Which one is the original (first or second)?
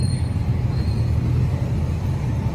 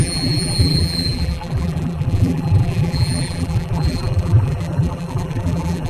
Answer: first